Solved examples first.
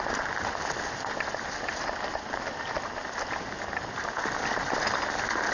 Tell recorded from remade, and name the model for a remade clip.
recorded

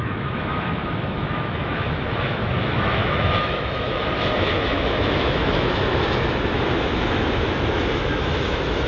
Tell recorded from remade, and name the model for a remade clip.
remade, autoencoder, DAC-VAE